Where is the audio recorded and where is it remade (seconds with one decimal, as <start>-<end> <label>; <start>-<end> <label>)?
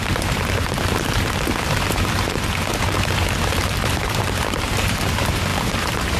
0.0-2.7 recorded; 2.7-5.0 remade; 5.0-5.5 recorded; 5.5-6.2 remade